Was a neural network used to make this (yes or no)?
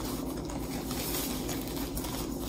no